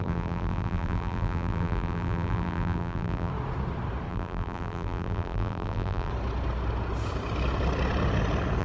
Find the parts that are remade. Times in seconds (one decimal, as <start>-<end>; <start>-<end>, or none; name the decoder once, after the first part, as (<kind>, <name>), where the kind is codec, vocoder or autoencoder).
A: 0.0-3.3 (vocoder, BigVGAN v2); 4.1-6.1